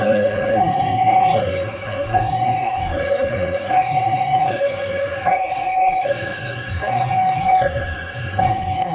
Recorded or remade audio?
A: remade